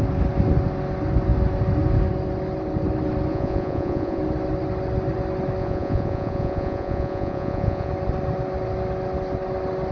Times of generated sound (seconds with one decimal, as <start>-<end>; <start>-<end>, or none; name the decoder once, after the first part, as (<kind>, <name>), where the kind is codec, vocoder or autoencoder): 3.3-4.2 (vocoder, Vocos); 5.6-7.9